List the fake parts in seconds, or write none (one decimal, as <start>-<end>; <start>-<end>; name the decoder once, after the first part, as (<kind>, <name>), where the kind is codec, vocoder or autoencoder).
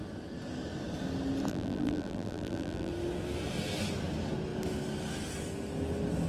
1.5-2.9 (vocoder, BigVGAN v2)